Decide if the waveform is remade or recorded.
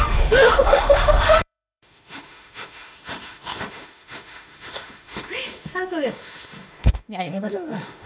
remade